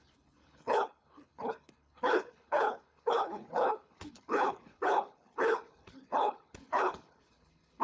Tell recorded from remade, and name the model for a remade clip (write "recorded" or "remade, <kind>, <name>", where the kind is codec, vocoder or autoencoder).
remade, codec, HILCodec